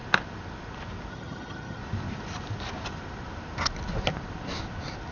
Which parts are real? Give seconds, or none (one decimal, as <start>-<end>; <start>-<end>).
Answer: 0.0-1.1; 1.8-5.1